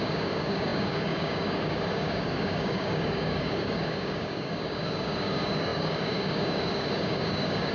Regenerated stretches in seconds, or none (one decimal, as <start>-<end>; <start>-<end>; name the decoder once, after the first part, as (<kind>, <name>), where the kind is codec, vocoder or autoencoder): 0.0-7.7 (codec, DAC)